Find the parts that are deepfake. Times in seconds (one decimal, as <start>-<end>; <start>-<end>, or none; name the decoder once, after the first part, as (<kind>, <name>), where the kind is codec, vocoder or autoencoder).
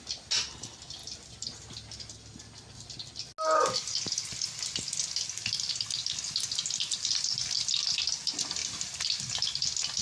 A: none